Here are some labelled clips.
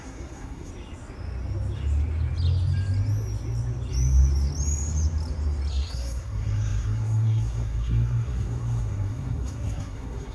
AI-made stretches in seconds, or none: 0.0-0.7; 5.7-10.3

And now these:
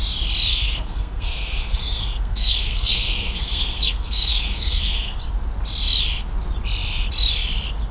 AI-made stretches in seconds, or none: 0.5-5.2

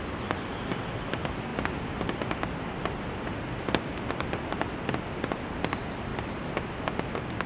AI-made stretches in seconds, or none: none

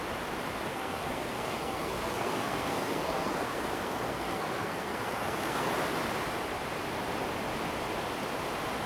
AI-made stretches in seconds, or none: 0.7-5.7

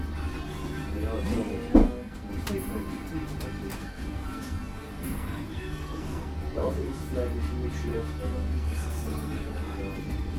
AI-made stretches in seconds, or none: 1.8-2.3; 3.7-7.0; 7.9-9.8

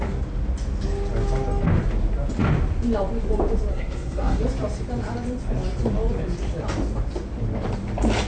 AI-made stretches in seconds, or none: 3.7-4.4

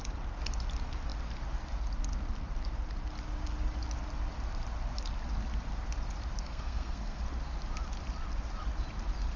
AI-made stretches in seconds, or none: 6.4-7.2

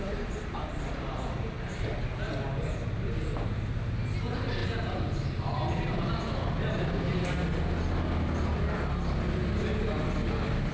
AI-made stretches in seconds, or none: none